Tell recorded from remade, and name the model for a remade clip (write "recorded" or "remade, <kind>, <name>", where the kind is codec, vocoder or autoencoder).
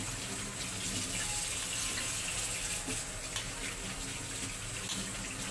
recorded